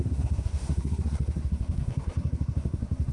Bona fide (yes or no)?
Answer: no